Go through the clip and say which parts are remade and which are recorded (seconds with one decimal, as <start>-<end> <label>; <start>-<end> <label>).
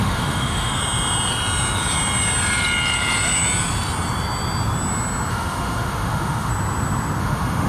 0.0-0.8 remade; 0.8-5.3 recorded; 5.3-6.5 remade; 6.5-7.2 recorded; 7.2-7.7 remade